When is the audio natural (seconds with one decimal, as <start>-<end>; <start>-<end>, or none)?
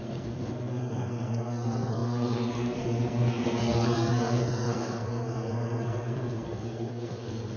none